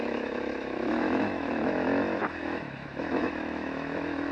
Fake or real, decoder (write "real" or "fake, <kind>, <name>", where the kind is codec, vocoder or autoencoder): fake, autoencoder, DAC-VAE